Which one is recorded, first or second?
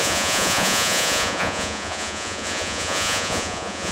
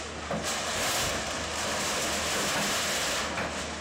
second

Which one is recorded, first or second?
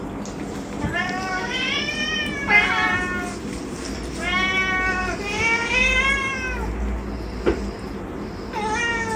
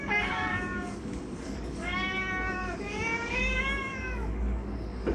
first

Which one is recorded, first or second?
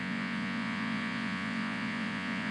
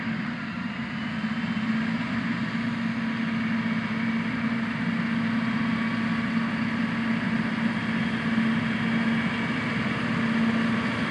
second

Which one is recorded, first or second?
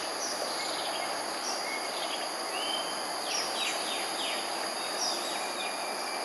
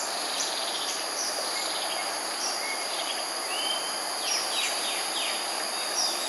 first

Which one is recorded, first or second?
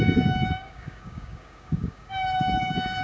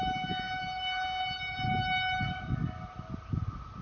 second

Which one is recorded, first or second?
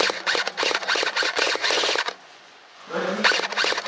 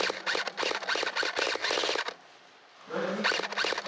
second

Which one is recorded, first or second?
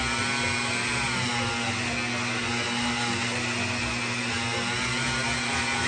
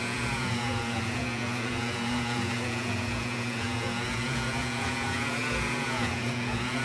first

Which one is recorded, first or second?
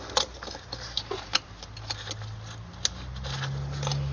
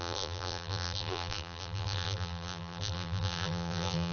first